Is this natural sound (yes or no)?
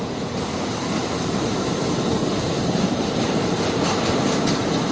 no